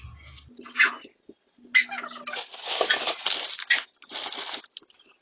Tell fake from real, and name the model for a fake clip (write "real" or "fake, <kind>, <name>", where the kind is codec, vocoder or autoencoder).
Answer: real